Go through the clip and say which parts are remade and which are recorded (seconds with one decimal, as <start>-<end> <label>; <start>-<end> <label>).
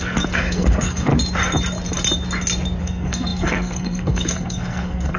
0.0-1.1 remade; 1.1-2.8 recorded; 2.8-5.2 remade